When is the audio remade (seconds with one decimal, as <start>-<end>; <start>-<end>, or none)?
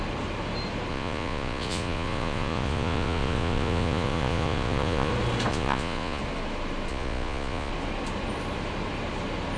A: 0.9-5.1; 5.5-6.2; 6.9-7.7